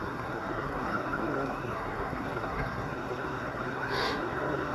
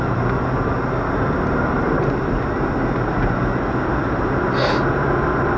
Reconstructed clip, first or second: first